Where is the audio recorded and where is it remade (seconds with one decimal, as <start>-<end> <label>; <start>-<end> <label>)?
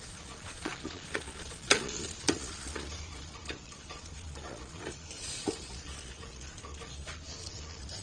0.0-8.0 remade